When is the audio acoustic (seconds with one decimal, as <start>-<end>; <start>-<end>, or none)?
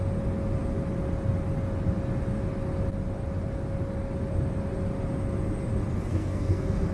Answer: 0.0-6.1